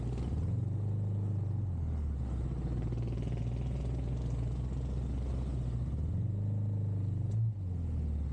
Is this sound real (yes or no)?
yes